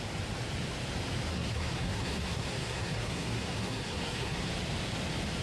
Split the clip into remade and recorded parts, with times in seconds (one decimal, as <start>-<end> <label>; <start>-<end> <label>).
0.0-1.3 recorded; 1.3-4.5 remade; 4.5-5.4 recorded